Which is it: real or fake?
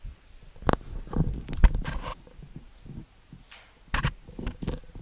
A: real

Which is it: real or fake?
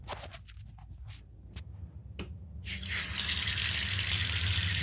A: real